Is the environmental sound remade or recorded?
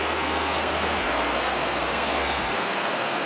remade